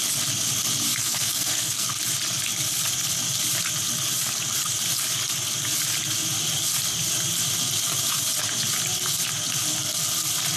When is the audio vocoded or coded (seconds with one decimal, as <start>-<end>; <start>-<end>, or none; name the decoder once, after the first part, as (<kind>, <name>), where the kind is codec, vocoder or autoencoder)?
1.0-1.9 (codec, SNAC)